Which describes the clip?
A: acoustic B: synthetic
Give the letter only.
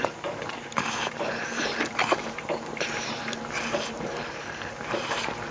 B